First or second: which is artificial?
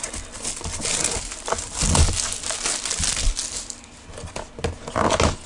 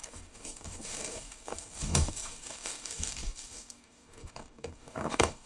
second